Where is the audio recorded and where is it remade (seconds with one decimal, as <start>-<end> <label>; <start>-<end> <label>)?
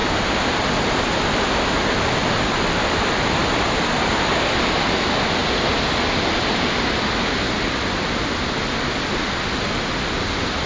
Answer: 0.0-10.7 recorded